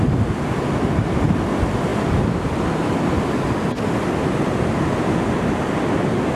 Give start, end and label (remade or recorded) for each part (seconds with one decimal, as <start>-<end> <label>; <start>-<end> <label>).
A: 0.0-6.4 recorded